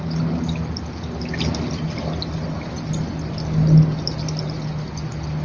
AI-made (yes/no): no